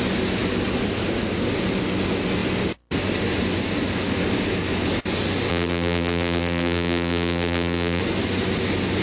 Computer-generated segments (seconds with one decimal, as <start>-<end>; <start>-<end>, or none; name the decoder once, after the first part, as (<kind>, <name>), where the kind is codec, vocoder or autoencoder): 5.5-8.0 (vocoder, BigVGAN v2)